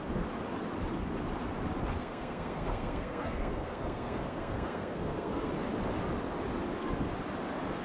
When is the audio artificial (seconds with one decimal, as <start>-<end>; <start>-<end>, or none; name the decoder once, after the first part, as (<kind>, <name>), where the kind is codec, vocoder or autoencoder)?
2.0-5.5 (codec, SNAC)